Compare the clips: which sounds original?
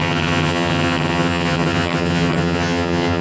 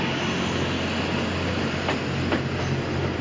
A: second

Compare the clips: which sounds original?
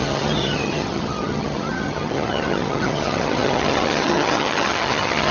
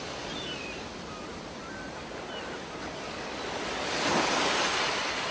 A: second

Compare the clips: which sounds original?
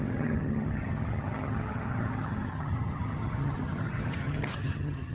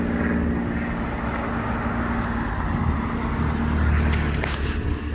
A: second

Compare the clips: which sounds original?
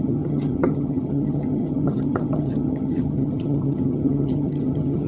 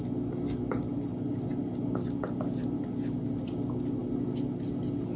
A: second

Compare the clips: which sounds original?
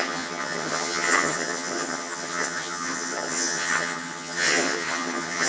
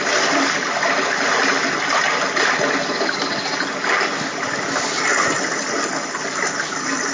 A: second